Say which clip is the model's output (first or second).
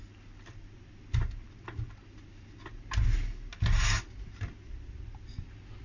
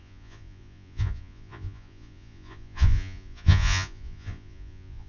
second